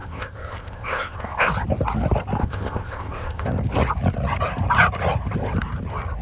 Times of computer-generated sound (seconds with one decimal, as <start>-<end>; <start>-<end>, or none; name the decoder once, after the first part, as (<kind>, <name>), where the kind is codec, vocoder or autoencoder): 0.0-1.5 (codec, ZipCodec); 2.4-3.5